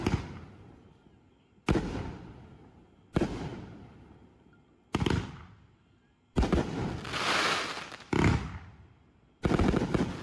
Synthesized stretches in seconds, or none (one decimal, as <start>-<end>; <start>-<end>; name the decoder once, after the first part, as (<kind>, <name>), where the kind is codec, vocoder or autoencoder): none